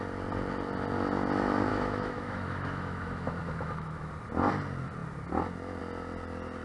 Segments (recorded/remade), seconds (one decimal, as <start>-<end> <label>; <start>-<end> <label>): 0.0-1.7 recorded; 1.7-4.1 remade; 4.1-6.6 recorded